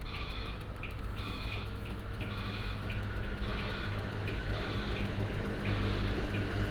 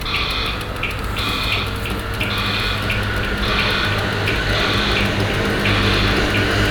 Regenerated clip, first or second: first